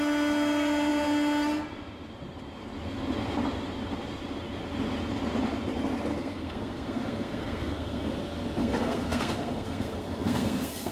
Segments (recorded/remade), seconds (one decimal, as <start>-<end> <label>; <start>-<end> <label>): 0.0-6.1 recorded; 6.1-8.1 remade; 8.1-8.6 recorded; 8.6-10.9 remade